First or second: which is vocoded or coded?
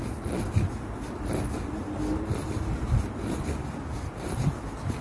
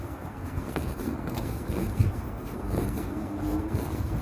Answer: second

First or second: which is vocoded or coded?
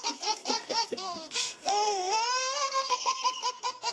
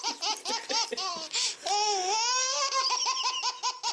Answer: first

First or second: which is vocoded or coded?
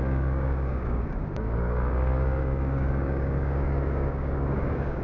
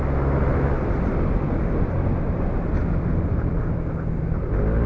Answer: first